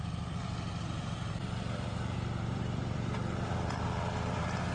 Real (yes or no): no